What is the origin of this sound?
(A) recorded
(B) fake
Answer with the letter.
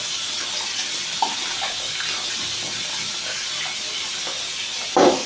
A